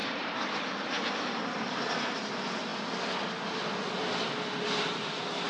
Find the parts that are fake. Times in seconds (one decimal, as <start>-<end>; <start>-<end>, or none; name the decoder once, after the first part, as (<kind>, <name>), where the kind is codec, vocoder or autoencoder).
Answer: none